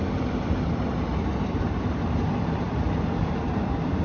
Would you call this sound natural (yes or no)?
no